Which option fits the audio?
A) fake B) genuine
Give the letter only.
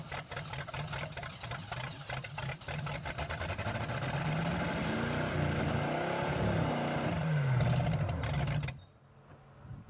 B